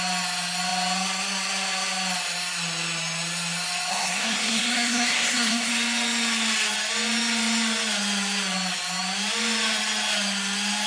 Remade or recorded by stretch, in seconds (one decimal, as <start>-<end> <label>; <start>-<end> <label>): 0.0-3.9 recorded; 3.9-5.7 remade; 5.7-10.9 recorded

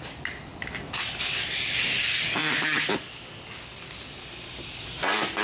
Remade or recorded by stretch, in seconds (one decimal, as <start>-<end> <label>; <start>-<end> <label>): 0.0-5.4 recorded

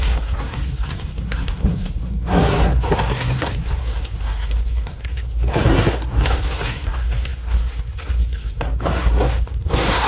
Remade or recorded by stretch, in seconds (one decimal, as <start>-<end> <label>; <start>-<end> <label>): 0.0-10.1 remade

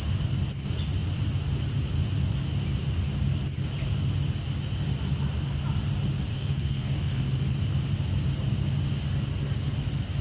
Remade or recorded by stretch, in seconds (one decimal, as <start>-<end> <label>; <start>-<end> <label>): 0.0-6.3 recorded; 6.3-7.2 remade; 7.2-10.2 recorded

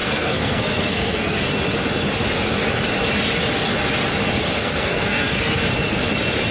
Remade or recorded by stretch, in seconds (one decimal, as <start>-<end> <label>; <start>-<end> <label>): 0.0-1.4 remade; 1.4-4.6 recorded; 4.6-5.6 remade; 5.6-6.5 recorded

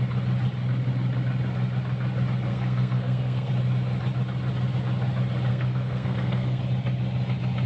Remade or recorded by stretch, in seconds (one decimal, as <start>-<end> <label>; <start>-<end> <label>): 0.0-2.5 recorded; 2.5-3.5 remade; 3.5-5.5 recorded; 5.5-6.6 remade; 6.6-7.7 recorded